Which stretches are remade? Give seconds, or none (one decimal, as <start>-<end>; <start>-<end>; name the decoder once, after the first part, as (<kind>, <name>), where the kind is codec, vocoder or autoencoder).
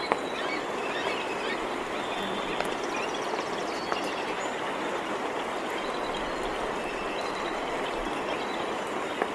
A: none